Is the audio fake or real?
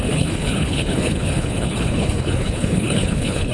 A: fake